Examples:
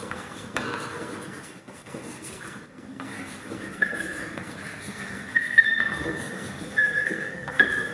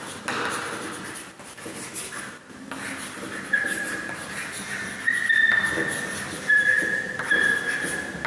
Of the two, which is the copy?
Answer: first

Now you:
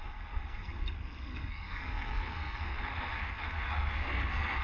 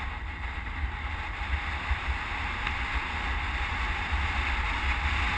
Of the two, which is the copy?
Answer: first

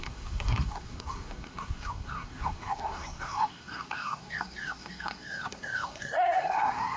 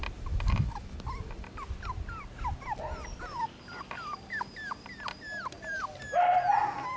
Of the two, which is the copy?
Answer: first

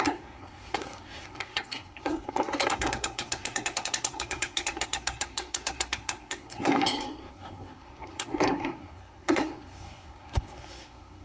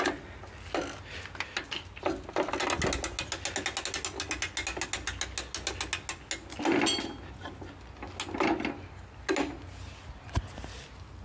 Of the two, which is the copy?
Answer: first